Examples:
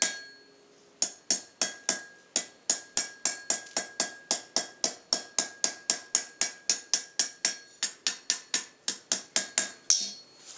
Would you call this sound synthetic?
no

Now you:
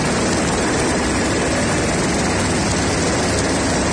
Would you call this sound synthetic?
no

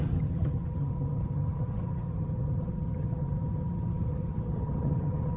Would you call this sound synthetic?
yes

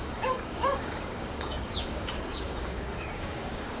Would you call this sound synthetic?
yes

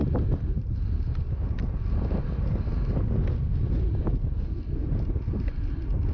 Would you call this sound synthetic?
no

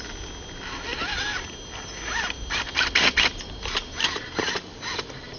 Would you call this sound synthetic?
no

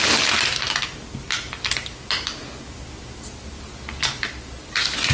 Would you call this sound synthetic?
no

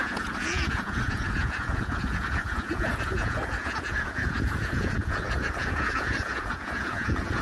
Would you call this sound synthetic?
yes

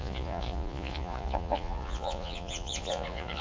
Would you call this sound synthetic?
yes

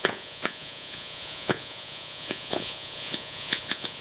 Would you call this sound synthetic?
yes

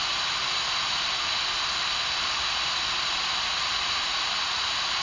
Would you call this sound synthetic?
no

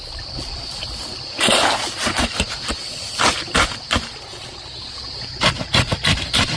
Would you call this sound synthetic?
yes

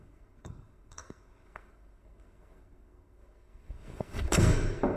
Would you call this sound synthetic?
yes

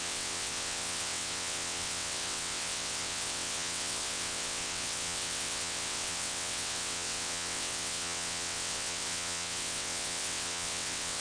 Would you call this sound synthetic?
yes